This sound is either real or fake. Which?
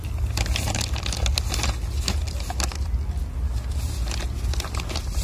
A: real